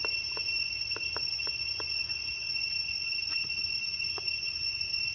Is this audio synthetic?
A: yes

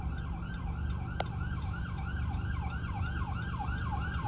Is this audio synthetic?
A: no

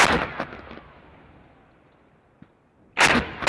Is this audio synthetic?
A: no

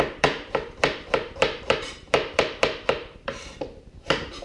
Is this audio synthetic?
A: yes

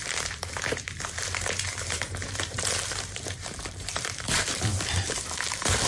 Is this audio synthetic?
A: yes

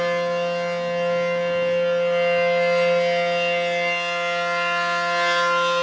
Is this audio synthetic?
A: no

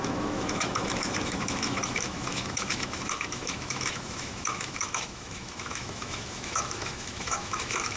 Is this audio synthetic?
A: yes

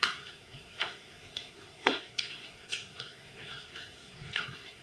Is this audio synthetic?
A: yes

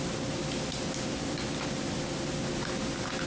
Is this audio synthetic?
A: no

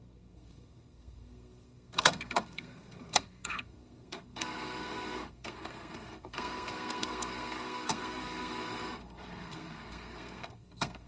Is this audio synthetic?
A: yes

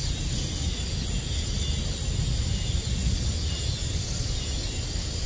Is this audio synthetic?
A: no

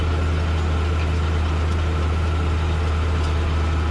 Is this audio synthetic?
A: no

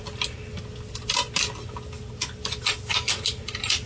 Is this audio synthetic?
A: no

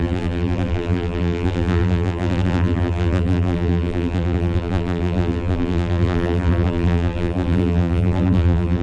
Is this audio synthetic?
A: yes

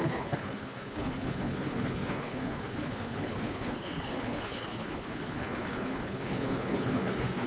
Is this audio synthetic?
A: yes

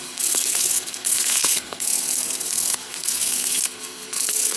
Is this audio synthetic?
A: yes